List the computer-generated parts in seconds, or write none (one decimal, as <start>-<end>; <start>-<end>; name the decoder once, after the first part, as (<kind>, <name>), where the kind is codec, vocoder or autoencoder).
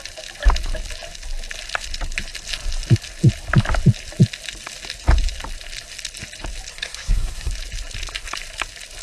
6.7-7.5 (codec, SNAC)